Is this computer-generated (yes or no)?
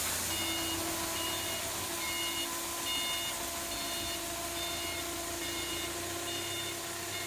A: no